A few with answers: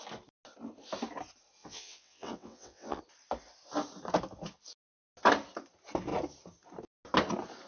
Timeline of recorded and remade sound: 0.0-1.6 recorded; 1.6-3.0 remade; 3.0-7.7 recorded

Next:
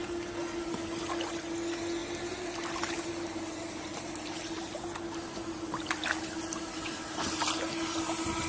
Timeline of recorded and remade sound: 0.0-2.0 recorded; 2.0-2.7 remade; 2.7-8.5 recorded